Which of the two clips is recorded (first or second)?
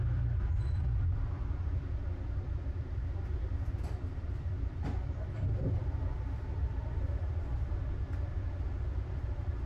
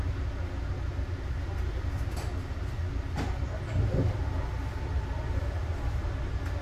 second